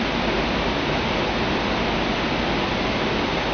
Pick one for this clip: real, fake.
real